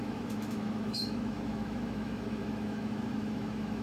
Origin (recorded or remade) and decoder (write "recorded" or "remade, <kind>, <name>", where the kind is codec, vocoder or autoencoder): remade, autoencoder, DAC-VAE